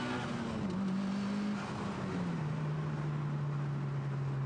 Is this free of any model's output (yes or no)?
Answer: yes